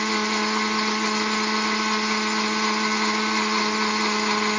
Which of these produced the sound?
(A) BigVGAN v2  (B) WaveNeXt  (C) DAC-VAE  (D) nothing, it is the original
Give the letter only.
D